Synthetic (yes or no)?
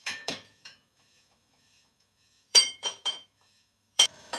yes